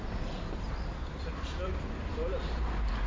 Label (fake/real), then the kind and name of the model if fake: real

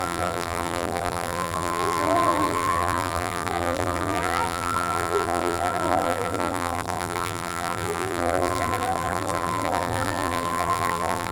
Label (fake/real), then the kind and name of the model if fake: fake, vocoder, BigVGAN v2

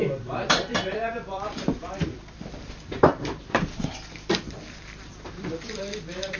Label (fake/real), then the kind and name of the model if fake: fake, vocoder, BigVGAN v2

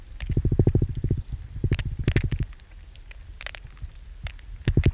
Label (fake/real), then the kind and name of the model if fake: real